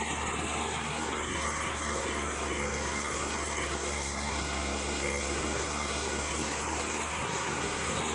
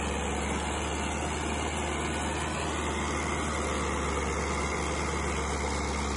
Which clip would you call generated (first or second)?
first